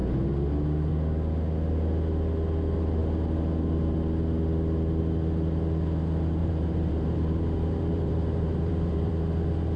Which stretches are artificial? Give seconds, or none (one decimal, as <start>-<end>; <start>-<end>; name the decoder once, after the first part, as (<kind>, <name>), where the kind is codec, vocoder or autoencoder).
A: 6.4-9.1 (vocoder, BigVGAN v2)